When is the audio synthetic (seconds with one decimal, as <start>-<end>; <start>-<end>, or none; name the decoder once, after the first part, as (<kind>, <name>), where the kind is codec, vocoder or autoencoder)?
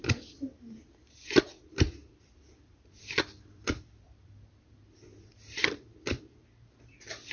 2.0-6.4 (vocoder, BigVGAN v2)